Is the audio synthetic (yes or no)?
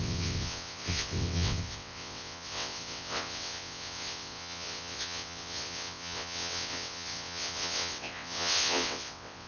yes